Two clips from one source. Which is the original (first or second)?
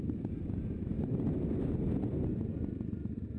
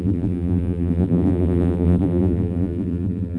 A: first